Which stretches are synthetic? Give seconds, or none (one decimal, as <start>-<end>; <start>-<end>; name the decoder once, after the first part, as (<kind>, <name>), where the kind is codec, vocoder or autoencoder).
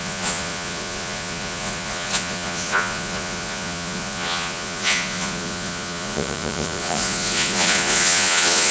0.0-8.7 (vocoder, Vocos)